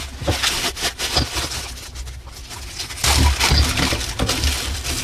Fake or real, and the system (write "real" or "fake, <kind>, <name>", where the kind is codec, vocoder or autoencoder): real